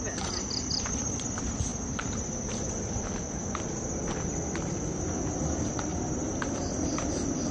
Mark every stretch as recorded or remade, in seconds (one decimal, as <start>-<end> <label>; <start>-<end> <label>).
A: 0.0-1.7 remade; 1.7-5.3 recorded; 5.3-7.5 remade